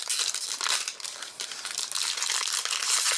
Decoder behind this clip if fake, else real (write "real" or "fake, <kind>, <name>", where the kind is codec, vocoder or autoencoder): real